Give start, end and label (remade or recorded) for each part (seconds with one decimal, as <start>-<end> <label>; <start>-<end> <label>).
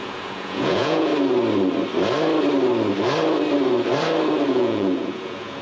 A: 0.0-1.1 remade; 1.1-4.5 recorded; 4.5-5.6 remade